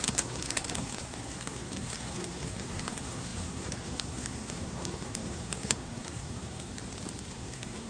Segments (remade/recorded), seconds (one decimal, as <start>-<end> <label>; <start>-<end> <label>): 0.0-6.7 remade; 6.7-7.3 recorded; 7.3-7.9 remade